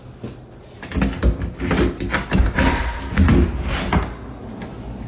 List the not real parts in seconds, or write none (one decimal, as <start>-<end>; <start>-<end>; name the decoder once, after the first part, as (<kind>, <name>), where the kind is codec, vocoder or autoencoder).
none